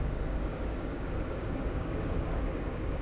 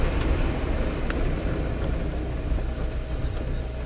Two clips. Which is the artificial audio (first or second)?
first